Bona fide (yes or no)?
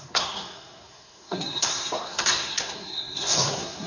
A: no